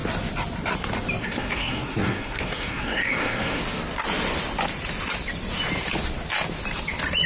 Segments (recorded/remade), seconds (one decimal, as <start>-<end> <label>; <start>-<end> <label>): 0.0-1.2 recorded; 1.2-3.6 remade; 3.6-7.3 recorded